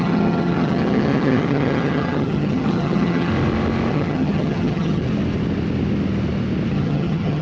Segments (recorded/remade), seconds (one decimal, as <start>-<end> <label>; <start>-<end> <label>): 0.0-3.3 remade; 3.3-3.9 recorded; 3.9-5.0 remade; 5.0-6.7 recorded; 6.7-7.4 remade